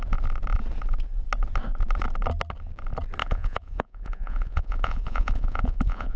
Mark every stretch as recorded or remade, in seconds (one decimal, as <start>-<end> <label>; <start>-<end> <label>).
0.0-3.2 recorded; 3.2-6.2 remade

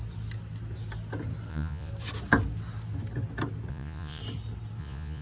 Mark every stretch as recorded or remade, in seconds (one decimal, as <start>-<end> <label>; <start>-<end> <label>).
0.0-1.5 recorded; 1.5-1.9 remade; 1.9-3.7 recorded; 3.7-4.2 remade; 4.2-4.8 recorded; 4.8-5.2 remade

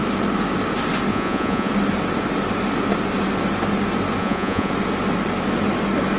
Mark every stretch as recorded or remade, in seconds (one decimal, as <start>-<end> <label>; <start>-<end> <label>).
0.0-1.1 recorded; 1.1-1.7 remade; 1.7-4.2 recorded; 4.2-4.7 remade; 4.7-6.2 recorded